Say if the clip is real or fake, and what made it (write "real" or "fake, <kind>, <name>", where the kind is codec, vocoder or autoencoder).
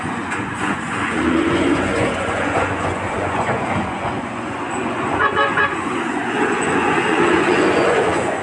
fake, vocoder, Vocos